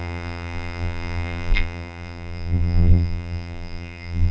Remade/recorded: remade